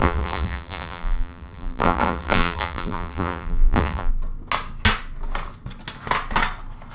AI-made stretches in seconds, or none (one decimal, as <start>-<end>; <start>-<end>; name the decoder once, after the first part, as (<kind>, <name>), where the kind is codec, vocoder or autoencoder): 0.0-4.1 (vocoder, BigVGAN v2)